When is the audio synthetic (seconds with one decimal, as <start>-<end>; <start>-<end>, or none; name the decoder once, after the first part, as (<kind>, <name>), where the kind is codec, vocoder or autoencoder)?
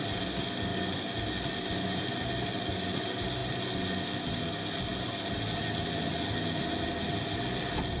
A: none